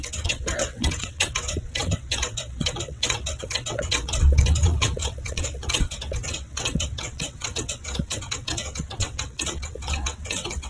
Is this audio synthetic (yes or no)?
yes